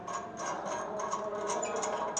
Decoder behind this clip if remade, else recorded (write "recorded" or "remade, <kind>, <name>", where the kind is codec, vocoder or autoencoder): recorded